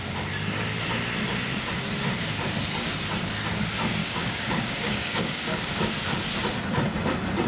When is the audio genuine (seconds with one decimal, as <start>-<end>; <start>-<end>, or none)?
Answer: 0.0-4.0; 5.8-7.5